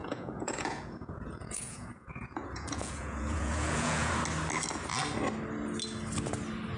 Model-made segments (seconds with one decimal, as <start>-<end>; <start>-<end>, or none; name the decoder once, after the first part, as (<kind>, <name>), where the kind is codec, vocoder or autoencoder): 0.0-4.1 (vocoder, Vocos)